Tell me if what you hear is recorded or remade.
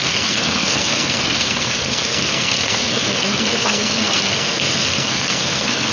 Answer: remade